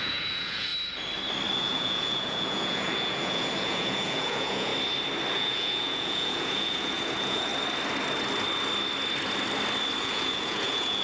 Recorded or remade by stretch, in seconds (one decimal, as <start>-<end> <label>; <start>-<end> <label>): 0.0-0.7 remade; 0.7-1.6 recorded; 1.6-4.7 remade; 4.7-5.3 recorded; 5.3-7.5 remade; 7.5-10.0 recorded; 10.0-11.0 remade